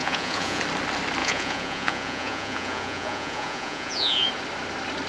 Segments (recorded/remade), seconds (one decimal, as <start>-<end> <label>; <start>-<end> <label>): 0.0-0.6 remade; 0.6-1.2 recorded; 1.2-4.3 remade; 4.3-5.1 recorded